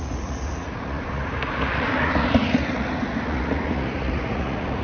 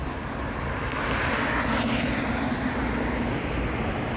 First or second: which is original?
second